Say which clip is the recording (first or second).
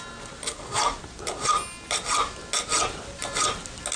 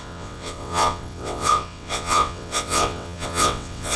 first